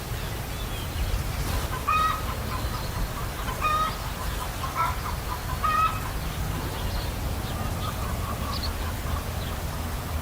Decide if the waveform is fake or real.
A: real